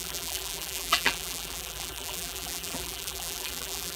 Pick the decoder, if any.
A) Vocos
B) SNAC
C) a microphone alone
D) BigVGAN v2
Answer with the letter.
D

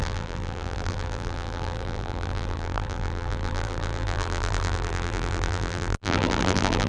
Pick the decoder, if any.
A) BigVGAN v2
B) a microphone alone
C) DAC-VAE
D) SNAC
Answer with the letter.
A